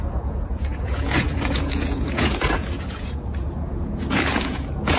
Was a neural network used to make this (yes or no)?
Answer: yes